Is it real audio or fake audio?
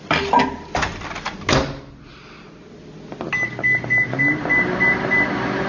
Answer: real